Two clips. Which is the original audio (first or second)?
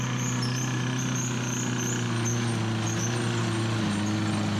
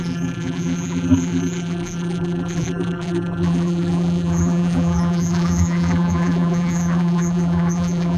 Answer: first